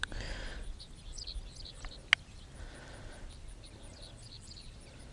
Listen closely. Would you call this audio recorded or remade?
recorded